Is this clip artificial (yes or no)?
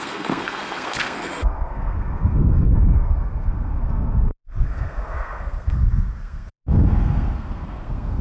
yes